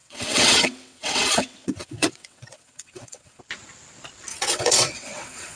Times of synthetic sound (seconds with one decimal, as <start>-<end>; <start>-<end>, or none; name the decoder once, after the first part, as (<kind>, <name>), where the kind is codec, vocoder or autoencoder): 0.0-3.4 (vocoder, WaveNeXt); 4.3-5.6

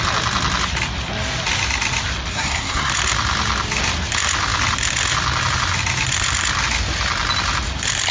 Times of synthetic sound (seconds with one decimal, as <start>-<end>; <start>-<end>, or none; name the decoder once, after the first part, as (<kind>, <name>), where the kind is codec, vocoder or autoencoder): 2.3-2.9 (codec, SNAC)

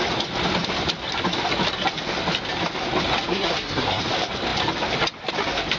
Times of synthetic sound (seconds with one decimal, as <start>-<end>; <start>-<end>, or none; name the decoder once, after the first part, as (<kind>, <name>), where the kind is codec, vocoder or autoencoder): 3.3-4.0 (codec, SNAC)

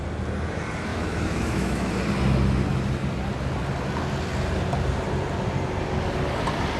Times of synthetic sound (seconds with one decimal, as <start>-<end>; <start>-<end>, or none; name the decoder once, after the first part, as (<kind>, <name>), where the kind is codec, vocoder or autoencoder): 0.9-1.9 (autoencoder, DAC-VAE)

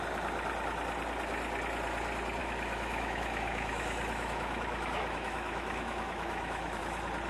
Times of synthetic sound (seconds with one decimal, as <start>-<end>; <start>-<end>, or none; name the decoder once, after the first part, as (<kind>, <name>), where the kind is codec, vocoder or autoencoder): 2.4-6.8 (autoencoder, DAC-VAE)

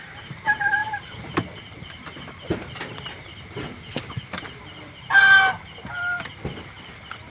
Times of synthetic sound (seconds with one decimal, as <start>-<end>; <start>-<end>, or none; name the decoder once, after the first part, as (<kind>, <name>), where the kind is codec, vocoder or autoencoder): 0.0-7.3 (vocoder, BigVGAN v2)

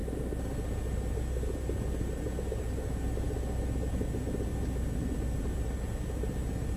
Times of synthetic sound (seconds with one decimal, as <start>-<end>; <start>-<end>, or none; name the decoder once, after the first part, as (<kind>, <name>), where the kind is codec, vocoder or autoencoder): none